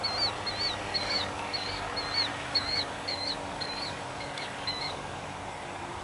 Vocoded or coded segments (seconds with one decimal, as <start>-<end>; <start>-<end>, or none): 0.9-1.9; 2.3-6.0